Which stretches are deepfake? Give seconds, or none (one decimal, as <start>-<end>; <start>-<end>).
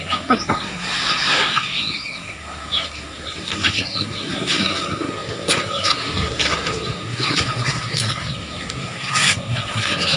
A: 0.0-10.2